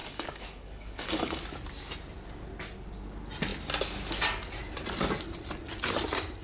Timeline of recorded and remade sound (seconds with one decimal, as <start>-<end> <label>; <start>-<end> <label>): 0.0-1.4 remade; 1.4-6.4 recorded